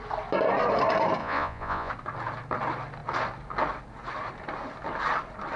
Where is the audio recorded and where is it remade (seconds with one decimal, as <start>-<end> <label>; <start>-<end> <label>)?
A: 0.0-1.2 recorded; 1.2-1.9 remade; 1.9-5.6 recorded